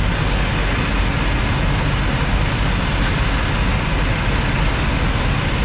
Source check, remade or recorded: recorded